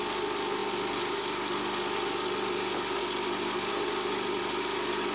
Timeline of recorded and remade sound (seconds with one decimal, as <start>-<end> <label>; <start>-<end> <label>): 0.0-5.1 recorded